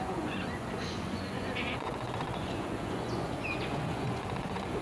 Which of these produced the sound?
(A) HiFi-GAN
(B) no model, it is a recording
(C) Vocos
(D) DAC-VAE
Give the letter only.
C